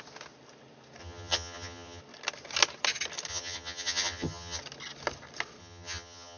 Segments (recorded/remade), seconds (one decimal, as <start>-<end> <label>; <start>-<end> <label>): 0.0-1.0 recorded; 1.0-2.0 remade; 2.0-3.3 recorded; 3.3-4.6 remade; 4.6-5.6 recorded; 5.6-6.4 remade